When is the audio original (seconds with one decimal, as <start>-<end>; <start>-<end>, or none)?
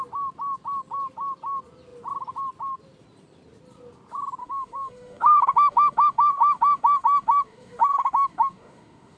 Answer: 0.0-4.4